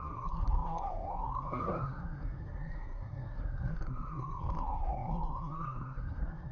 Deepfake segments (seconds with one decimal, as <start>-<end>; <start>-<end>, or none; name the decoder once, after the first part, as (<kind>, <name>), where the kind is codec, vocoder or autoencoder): 0.0-6.5 (codec, SNAC)